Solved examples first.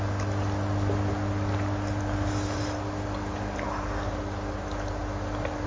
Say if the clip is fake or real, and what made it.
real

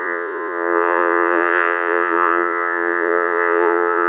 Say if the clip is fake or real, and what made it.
fake, vocoder, Vocos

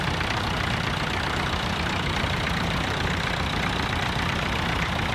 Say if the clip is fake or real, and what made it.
fake, vocoder, BigVGAN v2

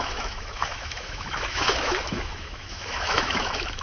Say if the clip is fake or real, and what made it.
fake, autoencoder, DAC-VAE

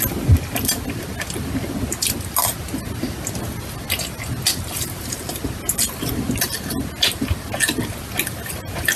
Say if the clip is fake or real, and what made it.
real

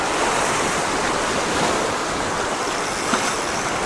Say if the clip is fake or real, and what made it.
real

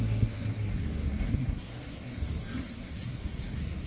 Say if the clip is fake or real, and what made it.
fake, codec, SNAC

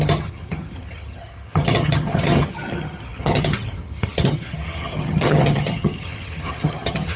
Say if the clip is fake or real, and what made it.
fake, vocoder, HiFi-GAN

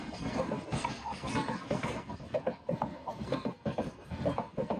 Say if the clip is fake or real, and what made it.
fake, codec, SNAC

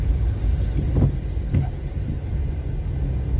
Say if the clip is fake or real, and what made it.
real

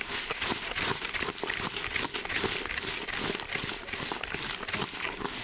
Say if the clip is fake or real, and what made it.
real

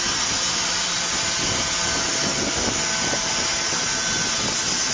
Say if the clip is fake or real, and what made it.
real